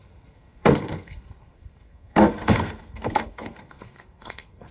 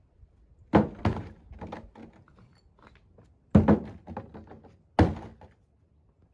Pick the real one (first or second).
second